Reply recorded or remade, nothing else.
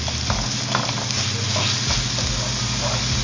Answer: recorded